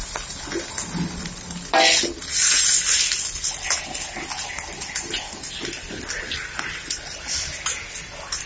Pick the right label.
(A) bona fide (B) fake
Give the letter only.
A